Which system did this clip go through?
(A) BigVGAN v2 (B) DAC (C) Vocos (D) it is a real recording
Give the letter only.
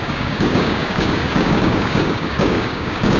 B